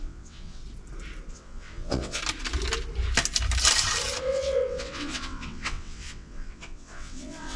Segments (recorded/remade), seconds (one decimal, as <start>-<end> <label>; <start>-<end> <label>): 0.0-0.6 remade; 0.6-1.3 recorded; 1.3-2.2 remade; 2.2-4.2 recorded; 4.2-7.6 remade